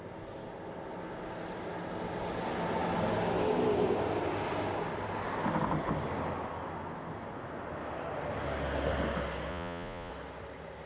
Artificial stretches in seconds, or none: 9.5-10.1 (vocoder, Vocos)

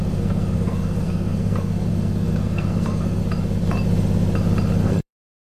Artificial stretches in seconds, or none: 0.0-3.2 (codec, SNAC); 4.8-5.6

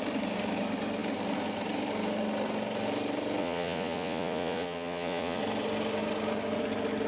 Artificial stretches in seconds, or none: 3.4-5.4 (vocoder, Vocos)

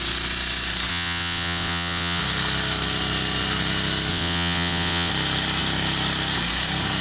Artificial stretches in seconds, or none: 0.9-2.2 (vocoder, WaveNeXt); 4.1-5.1

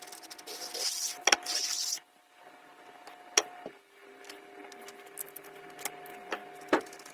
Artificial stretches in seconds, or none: none

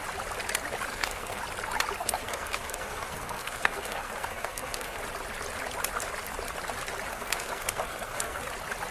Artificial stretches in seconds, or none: 0.9-1.4 (codec, SNAC); 2.0-5.0; 7.1-8.4

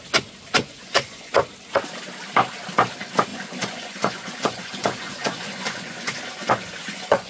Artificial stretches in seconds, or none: 0.6-1.3 (vocoder, Vocos); 3.3-7.3

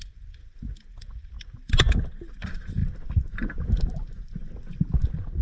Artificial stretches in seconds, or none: none